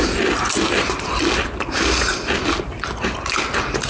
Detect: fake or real real